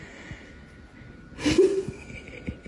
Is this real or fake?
real